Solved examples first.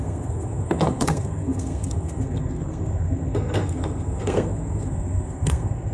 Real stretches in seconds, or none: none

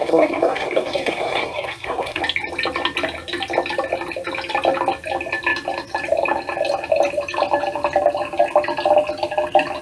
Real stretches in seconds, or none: 2.2-9.8